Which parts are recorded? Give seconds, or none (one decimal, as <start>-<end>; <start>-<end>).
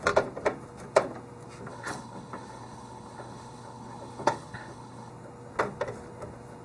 0.0-1.7; 5.1-6.6